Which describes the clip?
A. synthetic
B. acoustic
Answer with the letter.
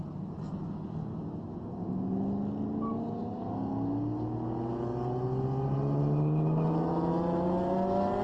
B